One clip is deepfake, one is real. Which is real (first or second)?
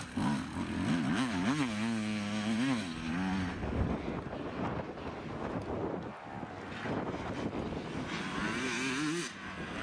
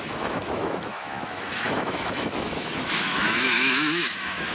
first